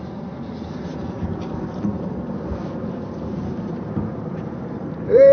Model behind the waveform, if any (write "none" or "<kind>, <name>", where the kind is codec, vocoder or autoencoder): vocoder, BigVGAN v2